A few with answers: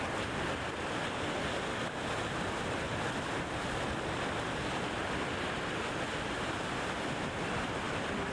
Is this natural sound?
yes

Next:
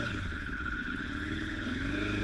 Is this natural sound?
no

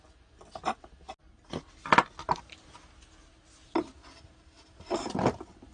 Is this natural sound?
yes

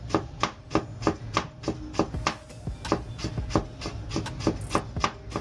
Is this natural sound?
yes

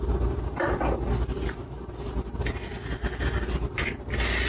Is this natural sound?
yes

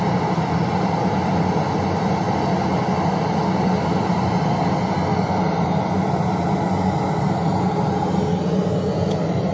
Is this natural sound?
yes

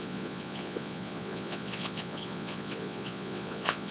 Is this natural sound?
no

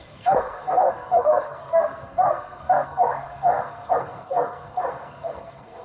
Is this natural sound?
no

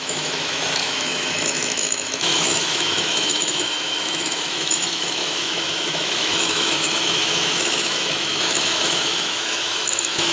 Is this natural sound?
no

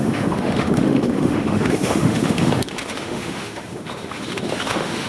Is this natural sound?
no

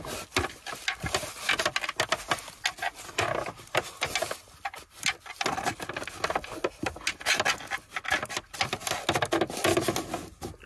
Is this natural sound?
yes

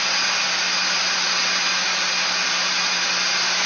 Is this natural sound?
yes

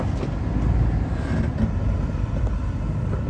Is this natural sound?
yes